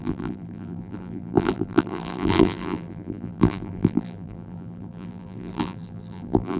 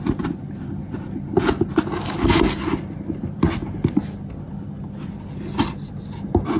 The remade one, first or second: first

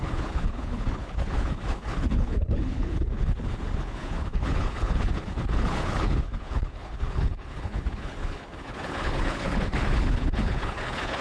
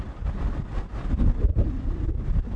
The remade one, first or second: first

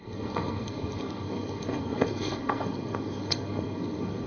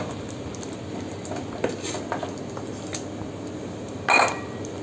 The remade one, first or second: first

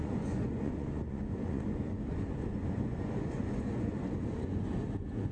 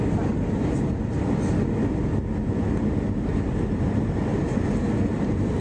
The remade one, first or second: first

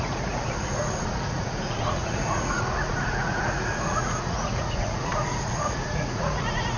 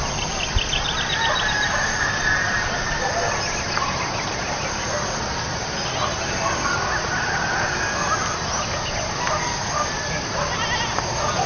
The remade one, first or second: first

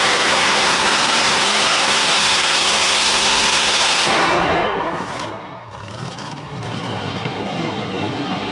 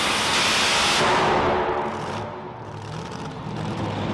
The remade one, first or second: first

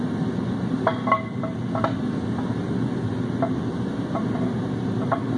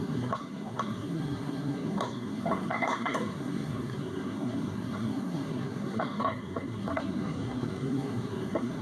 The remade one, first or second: second